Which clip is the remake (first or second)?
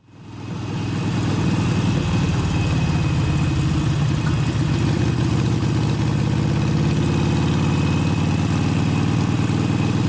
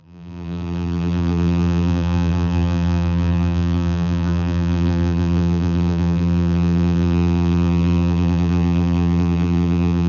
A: second